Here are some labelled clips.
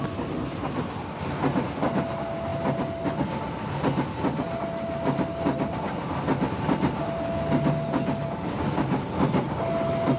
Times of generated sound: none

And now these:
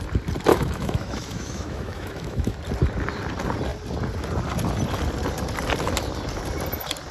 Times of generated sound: 0.5-2.6 (autoencoder, DAC-VAE)

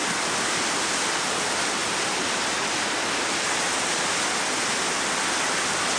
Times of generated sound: none